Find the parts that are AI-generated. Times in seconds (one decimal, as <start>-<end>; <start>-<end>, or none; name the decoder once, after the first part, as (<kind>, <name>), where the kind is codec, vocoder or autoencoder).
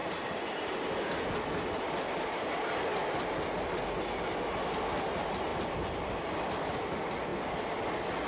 5.5-6.1 (vocoder, BigVGAN v2)